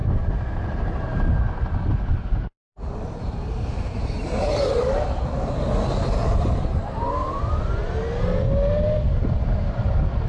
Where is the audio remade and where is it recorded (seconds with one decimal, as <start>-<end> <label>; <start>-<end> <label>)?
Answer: 0.0-1.4 remade; 1.4-2.1 recorded; 2.1-4.3 remade; 4.3-6.2 recorded; 6.2-7.4 remade; 7.4-10.3 recorded